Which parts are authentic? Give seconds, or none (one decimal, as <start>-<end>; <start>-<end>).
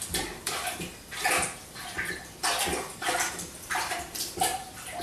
0.9-3.3